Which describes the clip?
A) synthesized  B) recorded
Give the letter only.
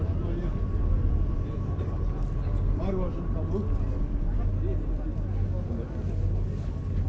B